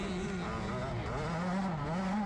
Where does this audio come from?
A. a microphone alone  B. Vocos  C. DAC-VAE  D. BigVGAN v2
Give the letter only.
A